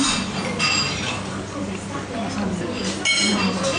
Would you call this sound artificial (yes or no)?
no